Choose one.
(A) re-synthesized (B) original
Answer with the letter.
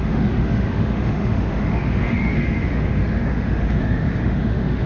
A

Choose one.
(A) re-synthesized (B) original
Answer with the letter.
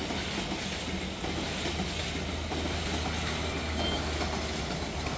B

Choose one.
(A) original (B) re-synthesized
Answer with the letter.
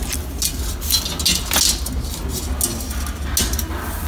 A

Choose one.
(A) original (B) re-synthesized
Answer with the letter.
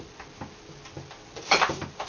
A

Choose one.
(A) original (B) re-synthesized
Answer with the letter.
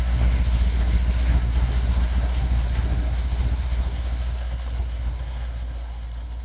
B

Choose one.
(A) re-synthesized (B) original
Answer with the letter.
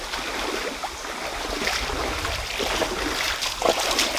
B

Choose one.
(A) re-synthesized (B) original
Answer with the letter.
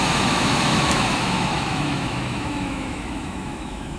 A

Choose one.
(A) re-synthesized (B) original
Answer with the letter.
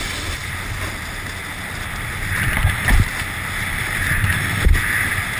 B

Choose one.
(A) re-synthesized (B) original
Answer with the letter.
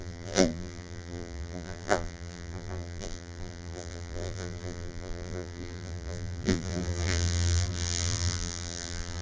A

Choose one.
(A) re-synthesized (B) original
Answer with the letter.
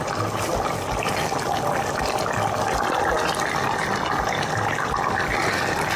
B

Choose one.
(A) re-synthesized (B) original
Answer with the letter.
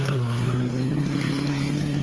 A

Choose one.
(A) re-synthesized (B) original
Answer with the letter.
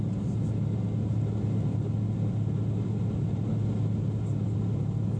B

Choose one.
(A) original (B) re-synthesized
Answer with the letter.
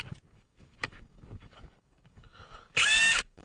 B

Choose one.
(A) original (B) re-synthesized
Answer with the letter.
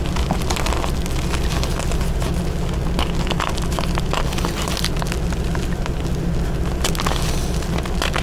A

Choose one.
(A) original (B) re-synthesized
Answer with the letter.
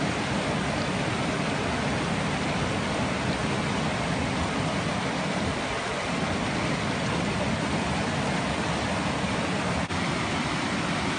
B